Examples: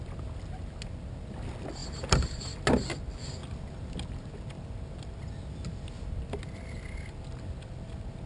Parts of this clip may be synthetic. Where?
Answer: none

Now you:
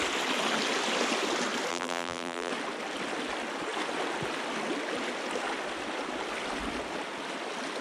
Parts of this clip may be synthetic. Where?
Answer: 1.7-2.5

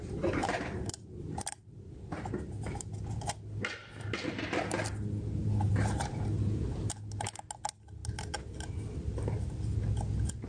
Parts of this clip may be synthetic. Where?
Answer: 0.4-1.9; 5.4-6.9

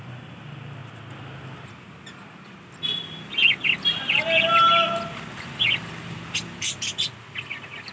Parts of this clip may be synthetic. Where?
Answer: none